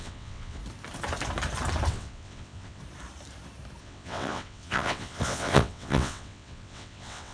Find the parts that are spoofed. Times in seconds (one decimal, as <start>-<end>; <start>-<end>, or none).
0.0-0.6; 1.9-2.8; 3.8-7.3